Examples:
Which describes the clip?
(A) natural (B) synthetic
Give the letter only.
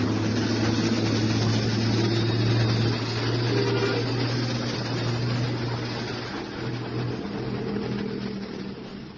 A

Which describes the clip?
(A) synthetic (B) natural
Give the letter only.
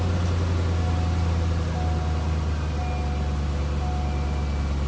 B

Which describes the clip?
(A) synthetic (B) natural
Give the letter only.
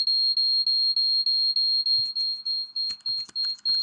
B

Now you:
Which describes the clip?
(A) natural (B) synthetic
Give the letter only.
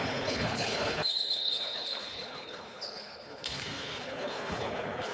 B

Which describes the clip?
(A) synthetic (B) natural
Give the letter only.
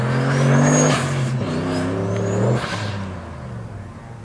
B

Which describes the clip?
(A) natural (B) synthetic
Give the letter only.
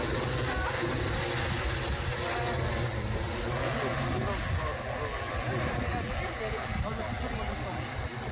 A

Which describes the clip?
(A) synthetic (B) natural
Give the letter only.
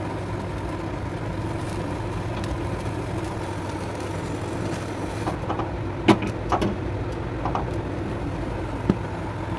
B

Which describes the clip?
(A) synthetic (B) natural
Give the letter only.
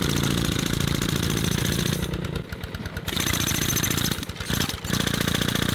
B